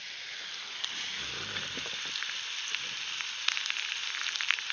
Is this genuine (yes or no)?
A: no